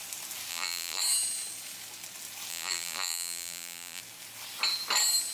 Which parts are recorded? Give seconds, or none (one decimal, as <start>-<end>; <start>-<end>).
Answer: 0.0-0.5; 1.0-2.5; 4.0-5.3